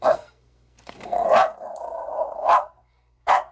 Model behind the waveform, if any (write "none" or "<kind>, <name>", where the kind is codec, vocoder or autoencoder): codec, SNAC